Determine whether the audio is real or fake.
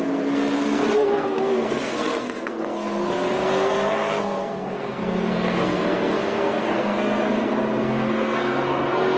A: fake